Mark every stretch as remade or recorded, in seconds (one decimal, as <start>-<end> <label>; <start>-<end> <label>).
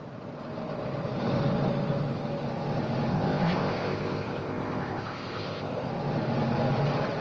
0.0-3.1 recorded; 3.1-5.9 remade; 5.9-7.2 recorded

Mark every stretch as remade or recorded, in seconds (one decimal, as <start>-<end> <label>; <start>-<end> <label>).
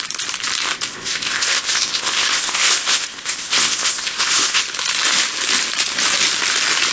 0.0-0.9 recorded; 0.9-4.6 remade; 4.6-6.9 recorded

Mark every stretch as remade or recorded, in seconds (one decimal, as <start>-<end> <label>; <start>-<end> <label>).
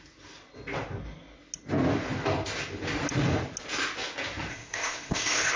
0.0-4.5 recorded; 4.5-5.6 remade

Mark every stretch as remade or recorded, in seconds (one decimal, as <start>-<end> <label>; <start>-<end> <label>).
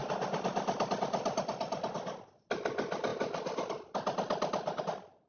0.0-5.3 recorded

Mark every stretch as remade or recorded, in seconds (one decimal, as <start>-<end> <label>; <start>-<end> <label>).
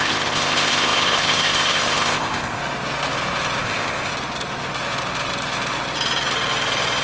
0.0-2.6 remade; 2.6-3.6 recorded; 3.6-4.1 remade; 4.1-7.0 recorded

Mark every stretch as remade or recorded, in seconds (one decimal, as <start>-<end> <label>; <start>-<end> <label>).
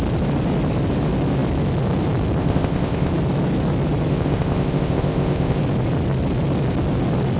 0.0-2.4 recorded; 2.4-3.1 remade; 3.1-4.1 recorded; 4.1-5.6 remade; 5.6-7.4 recorded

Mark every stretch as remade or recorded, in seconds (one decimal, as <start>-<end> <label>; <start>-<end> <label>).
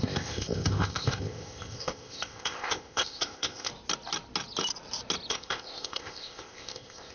0.0-3.7 remade; 3.7-5.3 recorded; 5.3-7.1 remade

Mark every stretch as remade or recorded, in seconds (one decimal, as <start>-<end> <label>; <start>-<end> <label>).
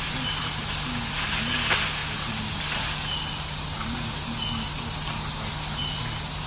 0.0-6.5 recorded